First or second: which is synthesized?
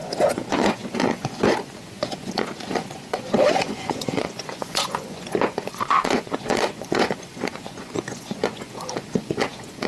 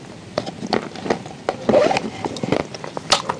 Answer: first